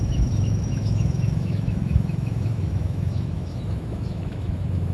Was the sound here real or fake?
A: fake